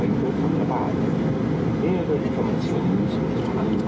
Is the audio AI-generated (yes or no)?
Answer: no